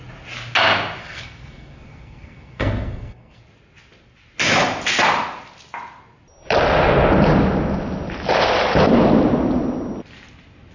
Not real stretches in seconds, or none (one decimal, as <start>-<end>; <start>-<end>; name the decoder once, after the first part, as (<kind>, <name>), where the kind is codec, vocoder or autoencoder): 1.0-3.4 (codec, SNAC)